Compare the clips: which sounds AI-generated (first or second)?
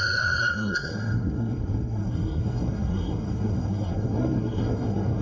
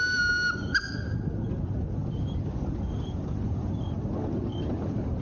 first